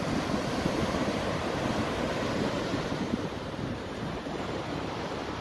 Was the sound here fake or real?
fake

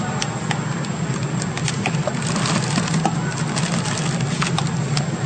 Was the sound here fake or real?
real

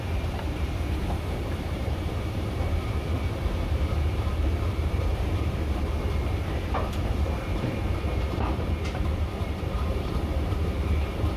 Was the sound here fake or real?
fake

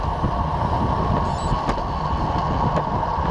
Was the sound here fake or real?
real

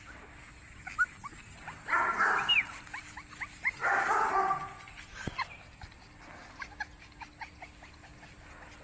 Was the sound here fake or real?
real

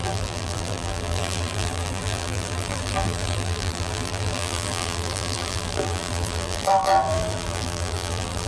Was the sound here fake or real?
fake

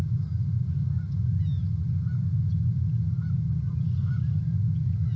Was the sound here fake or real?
real